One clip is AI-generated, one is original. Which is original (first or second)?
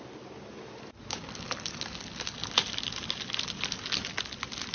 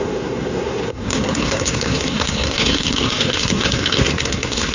first